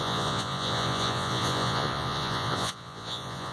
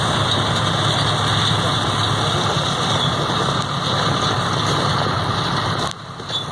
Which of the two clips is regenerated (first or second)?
first